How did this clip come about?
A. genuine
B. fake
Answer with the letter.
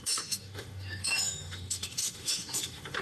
B